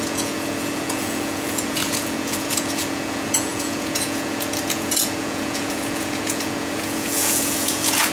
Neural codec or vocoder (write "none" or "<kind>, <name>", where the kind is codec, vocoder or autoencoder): vocoder, Vocos